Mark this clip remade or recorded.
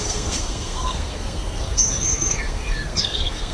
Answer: remade